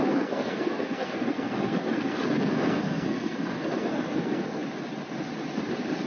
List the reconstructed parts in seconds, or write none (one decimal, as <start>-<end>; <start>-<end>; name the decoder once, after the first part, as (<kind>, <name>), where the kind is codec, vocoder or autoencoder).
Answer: 0.0-4.6 (codec, SNAC)